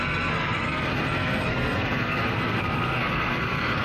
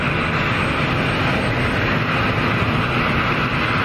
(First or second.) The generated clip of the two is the first